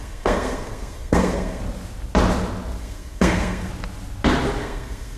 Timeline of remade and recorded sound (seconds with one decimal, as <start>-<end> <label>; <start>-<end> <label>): 0.0-1.6 remade; 1.6-2.8 recorded; 2.8-3.7 remade; 3.7-4.6 recorded; 4.6-5.2 remade